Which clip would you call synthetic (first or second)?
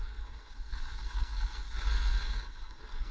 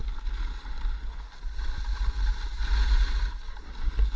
first